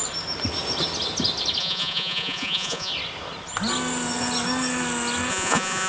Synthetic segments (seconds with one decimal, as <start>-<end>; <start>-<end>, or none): 1.6-2.9; 5.3-5.9